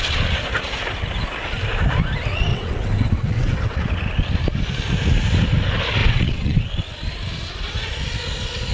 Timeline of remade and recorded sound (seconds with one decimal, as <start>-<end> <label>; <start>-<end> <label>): 0.0-2.5 recorded; 2.5-3.9 remade; 3.9-6.0 recorded; 6.0-6.6 remade; 6.6-8.7 recorded